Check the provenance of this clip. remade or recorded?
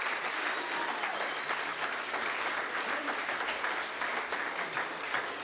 recorded